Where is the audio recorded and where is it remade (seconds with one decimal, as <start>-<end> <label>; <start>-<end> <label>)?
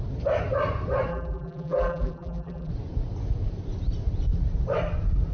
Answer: 0.0-1.1 recorded; 1.1-2.7 remade; 2.7-5.3 recorded